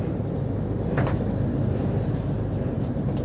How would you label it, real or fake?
real